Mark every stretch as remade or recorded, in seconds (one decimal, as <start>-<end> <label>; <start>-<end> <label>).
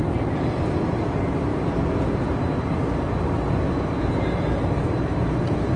0.0-5.8 recorded